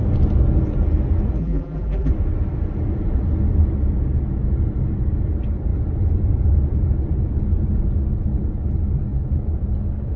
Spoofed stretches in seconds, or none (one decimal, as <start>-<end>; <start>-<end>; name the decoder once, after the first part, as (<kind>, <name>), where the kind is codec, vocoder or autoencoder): 1.4-2.1 (vocoder, BigVGAN v2)